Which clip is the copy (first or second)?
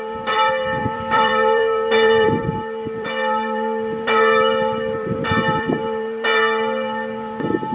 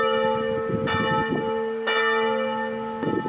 first